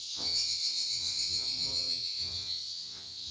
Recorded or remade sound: remade